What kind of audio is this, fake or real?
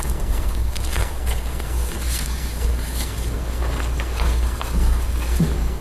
fake